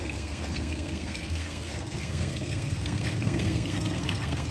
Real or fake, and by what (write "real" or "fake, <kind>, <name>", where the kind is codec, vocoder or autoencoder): fake, codec, SNAC